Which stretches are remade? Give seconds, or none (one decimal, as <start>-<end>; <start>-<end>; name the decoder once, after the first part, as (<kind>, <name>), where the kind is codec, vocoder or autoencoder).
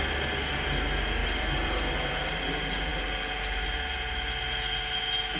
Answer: 1.2-1.8 (vocoder, BigVGAN v2)